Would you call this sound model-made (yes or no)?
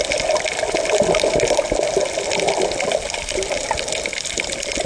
no